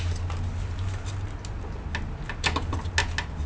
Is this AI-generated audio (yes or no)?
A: no